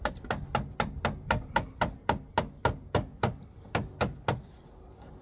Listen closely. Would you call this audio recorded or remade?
recorded